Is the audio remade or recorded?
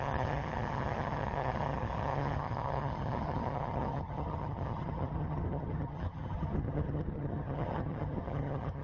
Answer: remade